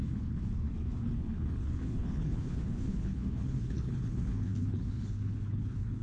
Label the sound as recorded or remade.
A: remade